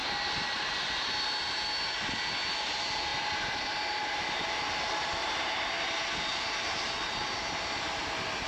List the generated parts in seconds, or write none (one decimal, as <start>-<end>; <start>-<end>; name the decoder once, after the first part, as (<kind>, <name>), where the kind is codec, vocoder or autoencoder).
none